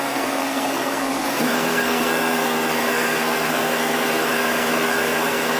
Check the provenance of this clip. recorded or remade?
remade